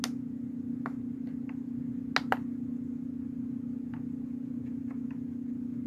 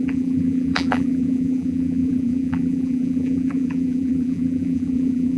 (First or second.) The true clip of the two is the first